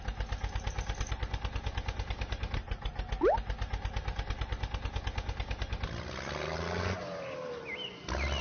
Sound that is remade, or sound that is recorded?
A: recorded